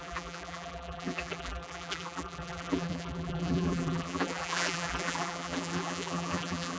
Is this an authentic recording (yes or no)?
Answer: no